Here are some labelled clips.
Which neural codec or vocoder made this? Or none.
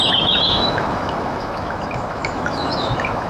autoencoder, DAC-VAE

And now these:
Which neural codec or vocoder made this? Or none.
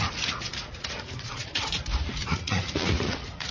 vocoder, Vocos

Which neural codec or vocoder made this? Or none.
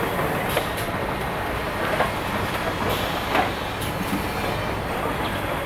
none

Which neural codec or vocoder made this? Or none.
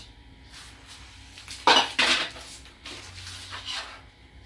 none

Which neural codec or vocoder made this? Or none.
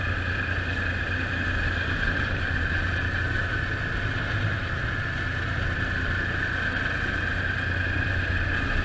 none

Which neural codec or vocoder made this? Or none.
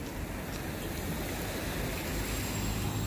none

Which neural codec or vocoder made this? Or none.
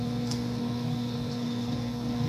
codec, SNAC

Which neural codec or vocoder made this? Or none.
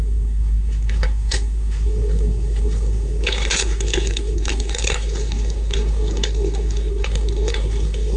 codec, SNAC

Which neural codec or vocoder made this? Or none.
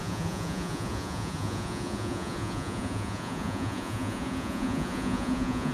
vocoder, Vocos